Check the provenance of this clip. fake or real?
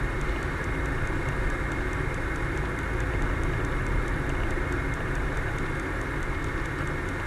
real